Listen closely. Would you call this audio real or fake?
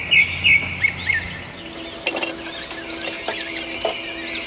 real